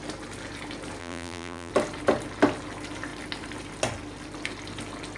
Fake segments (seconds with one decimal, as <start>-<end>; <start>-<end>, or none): 1.0-1.7